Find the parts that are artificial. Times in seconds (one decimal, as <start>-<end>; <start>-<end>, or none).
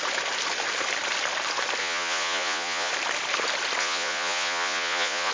1.8-2.9; 3.8-5.3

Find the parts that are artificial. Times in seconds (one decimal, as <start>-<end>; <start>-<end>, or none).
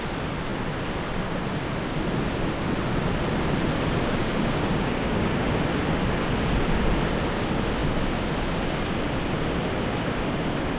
4.2-5.4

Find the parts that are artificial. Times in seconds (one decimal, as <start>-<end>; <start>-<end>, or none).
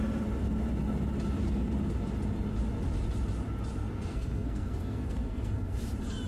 3.8-5.8